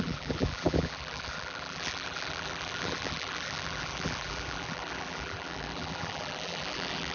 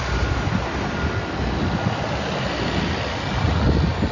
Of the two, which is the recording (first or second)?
second